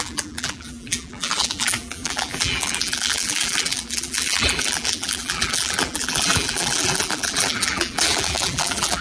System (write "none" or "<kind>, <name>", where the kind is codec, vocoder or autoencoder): vocoder, BigVGAN v2